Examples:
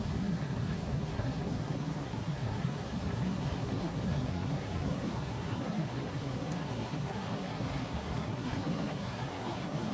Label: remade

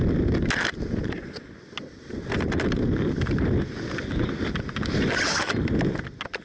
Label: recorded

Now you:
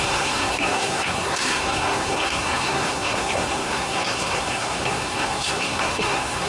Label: remade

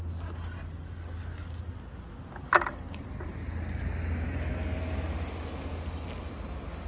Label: recorded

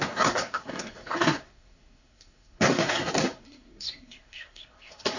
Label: remade